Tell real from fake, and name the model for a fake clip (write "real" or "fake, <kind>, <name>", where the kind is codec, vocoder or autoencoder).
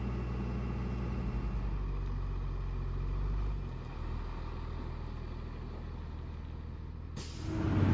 real